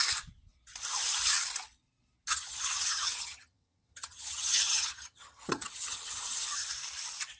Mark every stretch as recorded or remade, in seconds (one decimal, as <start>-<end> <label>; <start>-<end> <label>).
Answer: 0.0-2.3 recorded; 2.3-6.7 remade; 6.7-7.4 recorded